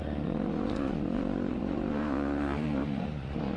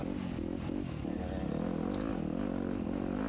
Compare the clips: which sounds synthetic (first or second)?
first